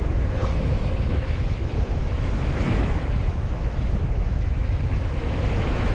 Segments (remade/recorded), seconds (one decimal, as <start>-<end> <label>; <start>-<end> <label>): 0.0-5.9 remade